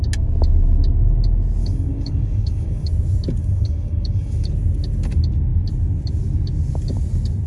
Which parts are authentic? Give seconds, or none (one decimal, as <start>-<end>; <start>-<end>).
0.0-1.6; 2.9-3.4; 4.5-7.5